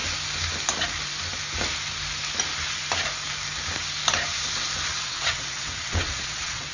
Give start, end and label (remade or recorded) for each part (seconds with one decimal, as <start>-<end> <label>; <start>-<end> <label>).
0.0-4.9 recorded; 4.9-6.7 remade